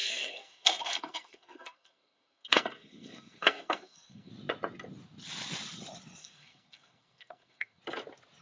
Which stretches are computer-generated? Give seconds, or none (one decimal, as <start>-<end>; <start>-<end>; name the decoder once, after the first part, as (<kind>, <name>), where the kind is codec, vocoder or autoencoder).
0.0-4.3 (codec, SNAC); 6.2-7.8